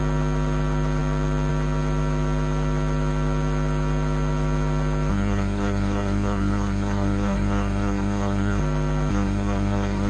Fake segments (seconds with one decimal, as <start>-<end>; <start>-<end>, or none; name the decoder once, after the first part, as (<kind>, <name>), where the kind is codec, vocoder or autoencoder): 5.1-8.6 (codec, SNAC); 9.1-10.1